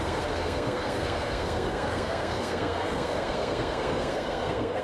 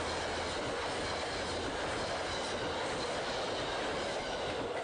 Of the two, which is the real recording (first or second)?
second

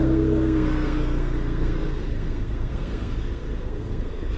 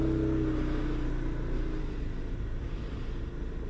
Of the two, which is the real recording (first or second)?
second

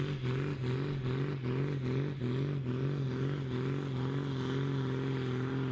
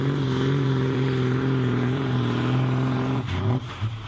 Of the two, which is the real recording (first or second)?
first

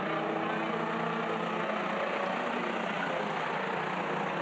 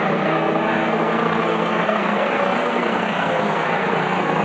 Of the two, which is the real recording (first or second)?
first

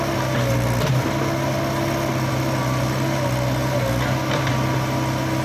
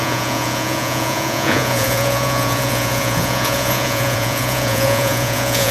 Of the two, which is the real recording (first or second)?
first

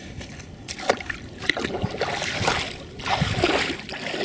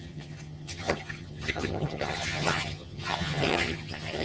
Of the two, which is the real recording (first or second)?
first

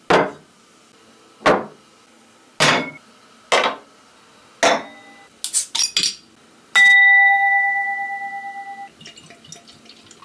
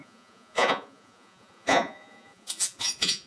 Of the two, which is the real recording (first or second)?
first